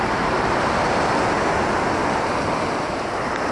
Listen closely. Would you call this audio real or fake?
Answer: real